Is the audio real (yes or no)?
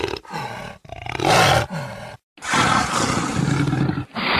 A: yes